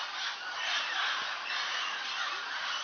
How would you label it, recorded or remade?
recorded